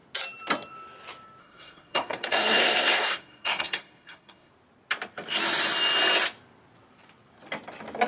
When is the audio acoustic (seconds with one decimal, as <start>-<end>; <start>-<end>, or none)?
0.0-1.4; 4.5-8.1